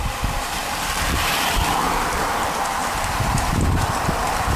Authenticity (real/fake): fake